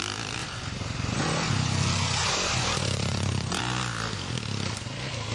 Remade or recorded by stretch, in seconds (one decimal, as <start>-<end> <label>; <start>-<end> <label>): 0.0-0.4 recorded; 0.4-3.6 remade; 3.6-5.3 recorded